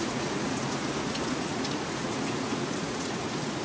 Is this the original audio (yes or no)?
no